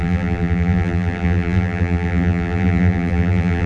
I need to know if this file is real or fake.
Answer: fake